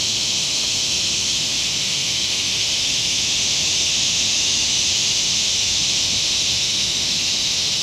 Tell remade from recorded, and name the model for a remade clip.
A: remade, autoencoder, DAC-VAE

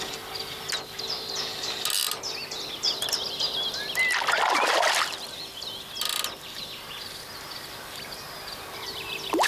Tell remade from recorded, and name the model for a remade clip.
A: recorded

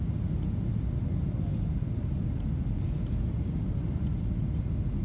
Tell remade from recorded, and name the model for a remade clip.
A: recorded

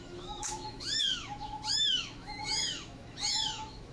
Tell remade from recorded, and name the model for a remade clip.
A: remade, autoencoder, DAC-VAE